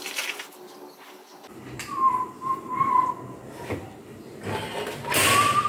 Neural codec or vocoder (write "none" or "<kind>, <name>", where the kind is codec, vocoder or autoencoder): none